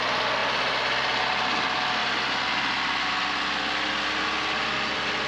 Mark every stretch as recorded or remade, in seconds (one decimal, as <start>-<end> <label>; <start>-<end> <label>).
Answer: 0.0-2.0 recorded; 2.0-3.1 remade; 3.1-5.3 recorded